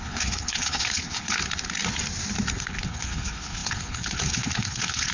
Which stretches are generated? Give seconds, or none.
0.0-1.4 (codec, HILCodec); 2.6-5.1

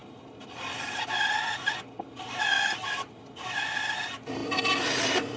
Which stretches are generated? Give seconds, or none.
none

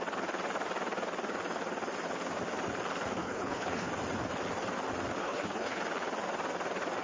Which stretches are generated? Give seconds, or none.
3.2-3.9 (codec, HILCodec); 5.2-5.8

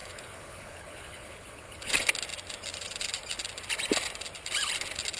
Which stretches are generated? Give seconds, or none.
0.0-1.9 (codec, HILCodec)

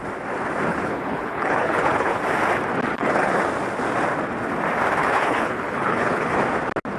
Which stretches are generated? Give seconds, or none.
0.7-2.2 (codec, HILCodec); 2.9-3.4; 5.0-6.4

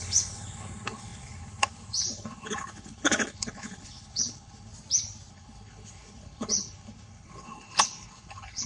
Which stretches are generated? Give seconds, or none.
0.0-4.7 (codec, HILCodec); 5.3-8.7